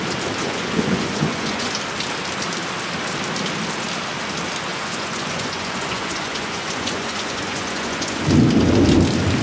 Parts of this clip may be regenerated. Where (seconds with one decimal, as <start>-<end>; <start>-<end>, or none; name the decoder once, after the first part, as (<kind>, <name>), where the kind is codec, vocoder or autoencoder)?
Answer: 0.4-1.7 (vocoder, Vocos); 4.7-8.2